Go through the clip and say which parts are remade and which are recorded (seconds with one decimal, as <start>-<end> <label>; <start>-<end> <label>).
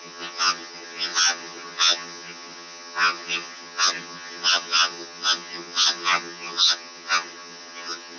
0.0-8.2 remade